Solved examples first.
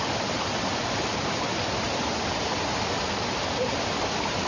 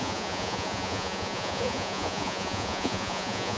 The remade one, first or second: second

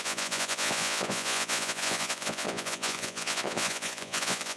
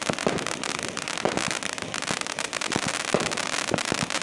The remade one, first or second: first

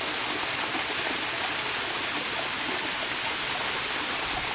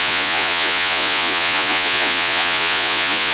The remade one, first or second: second